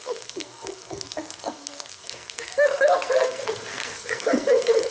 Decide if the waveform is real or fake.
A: fake